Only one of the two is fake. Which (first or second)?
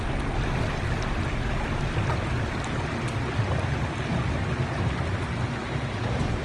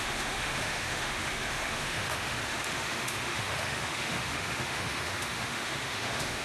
second